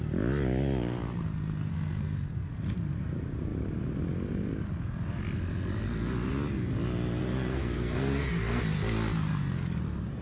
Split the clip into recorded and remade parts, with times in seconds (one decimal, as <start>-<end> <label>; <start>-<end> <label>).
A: 0.0-1.7 recorded; 1.7-2.6 remade; 2.6-7.2 recorded; 7.2-8.6 remade; 8.6-10.2 recorded

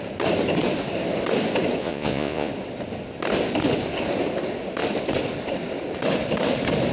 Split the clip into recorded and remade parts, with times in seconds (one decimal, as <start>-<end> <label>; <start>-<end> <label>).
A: 0.0-1.8 recorded; 1.8-2.5 remade; 2.5-6.9 recorded

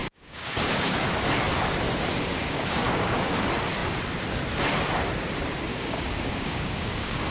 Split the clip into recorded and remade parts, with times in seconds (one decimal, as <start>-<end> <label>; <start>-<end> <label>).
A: 0.0-1.2 remade; 1.2-2.3 recorded; 2.3-3.3 remade; 3.3-5.7 recorded; 5.7-7.3 remade

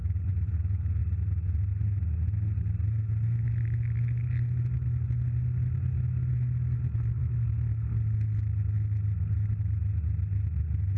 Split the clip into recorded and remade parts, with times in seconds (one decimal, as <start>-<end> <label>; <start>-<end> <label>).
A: 0.0-11.0 recorded

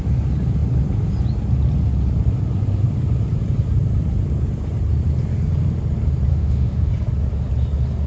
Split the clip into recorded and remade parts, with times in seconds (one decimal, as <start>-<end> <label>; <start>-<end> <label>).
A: 0.0-6.3 recorded; 6.3-6.9 remade; 6.9-8.1 recorded

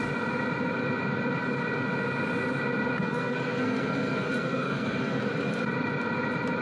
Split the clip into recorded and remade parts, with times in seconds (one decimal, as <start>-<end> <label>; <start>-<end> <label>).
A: 0.0-3.0 recorded; 3.0-5.2 remade; 5.2-6.6 recorded